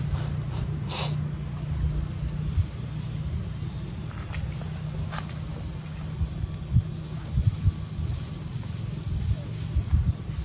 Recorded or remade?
recorded